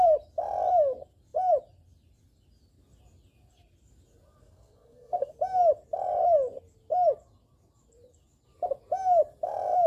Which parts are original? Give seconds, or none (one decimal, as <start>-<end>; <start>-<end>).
0.0-4.4; 5.3-9.9